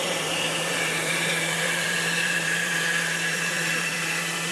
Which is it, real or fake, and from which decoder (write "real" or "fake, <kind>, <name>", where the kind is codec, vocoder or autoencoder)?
fake, vocoder, BigVGAN v2